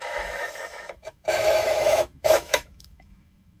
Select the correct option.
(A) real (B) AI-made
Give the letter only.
B